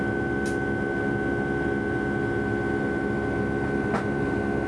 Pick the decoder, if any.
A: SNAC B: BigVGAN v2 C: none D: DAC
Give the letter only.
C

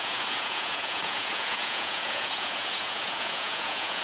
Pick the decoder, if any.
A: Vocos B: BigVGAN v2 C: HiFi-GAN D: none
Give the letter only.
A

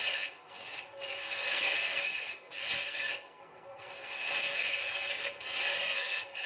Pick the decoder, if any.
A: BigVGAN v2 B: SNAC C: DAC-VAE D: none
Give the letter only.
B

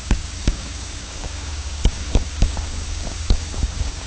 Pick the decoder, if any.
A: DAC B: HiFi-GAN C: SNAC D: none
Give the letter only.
A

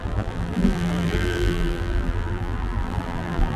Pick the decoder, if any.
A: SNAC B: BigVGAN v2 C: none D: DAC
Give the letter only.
B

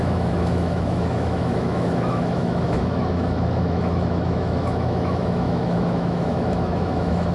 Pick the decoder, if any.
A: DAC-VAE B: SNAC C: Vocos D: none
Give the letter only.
A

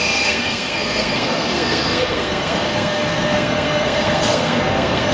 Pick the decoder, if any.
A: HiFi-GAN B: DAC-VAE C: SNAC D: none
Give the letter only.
C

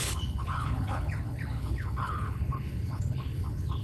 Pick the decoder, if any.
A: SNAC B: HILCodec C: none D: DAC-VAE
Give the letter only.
B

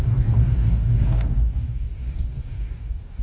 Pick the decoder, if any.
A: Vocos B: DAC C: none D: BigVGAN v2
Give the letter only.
B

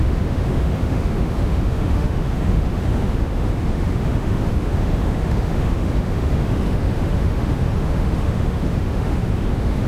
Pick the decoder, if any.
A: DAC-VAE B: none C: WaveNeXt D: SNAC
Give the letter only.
A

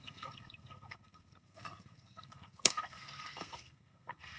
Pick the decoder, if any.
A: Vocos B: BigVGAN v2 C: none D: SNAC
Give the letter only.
D